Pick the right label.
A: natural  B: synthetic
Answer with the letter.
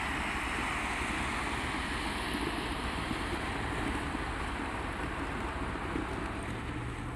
A